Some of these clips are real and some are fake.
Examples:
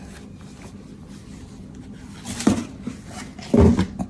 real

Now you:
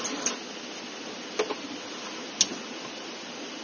real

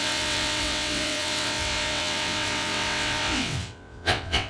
fake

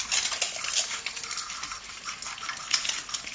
real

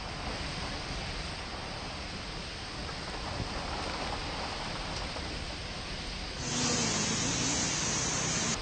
real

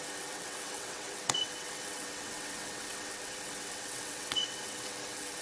fake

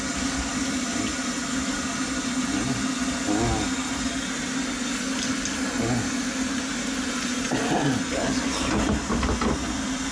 real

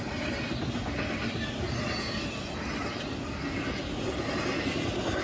real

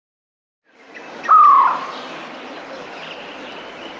real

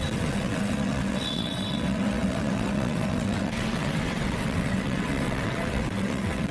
fake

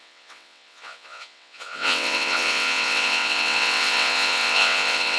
fake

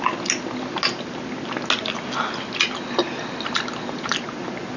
real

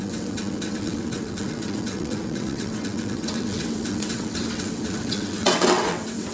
fake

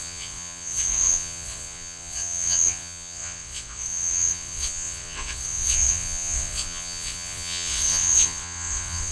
fake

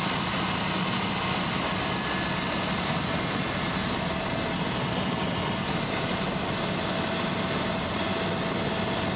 real